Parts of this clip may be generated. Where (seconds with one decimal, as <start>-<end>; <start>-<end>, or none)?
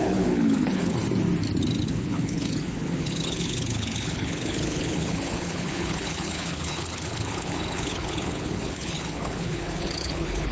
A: 0.0-1.0; 1.8-10.5